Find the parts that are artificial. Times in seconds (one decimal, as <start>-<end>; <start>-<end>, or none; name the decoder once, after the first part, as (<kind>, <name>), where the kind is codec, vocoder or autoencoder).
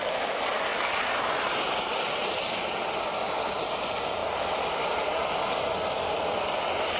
none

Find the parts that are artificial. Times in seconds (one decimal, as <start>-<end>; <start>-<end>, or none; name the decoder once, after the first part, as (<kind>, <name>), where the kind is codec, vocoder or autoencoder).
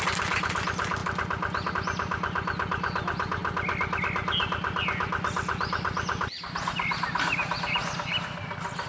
none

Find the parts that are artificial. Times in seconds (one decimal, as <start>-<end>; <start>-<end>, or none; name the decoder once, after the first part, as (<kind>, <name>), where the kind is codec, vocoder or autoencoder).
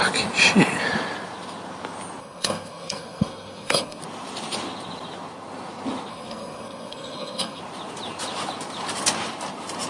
2.2-4.0 (codec, SNAC); 6.1-7.6